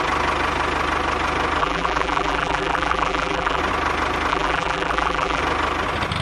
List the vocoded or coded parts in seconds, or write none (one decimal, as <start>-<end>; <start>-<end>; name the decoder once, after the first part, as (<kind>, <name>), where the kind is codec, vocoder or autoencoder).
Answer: 1.6-3.6 (vocoder, BigVGAN v2); 4.3-5.4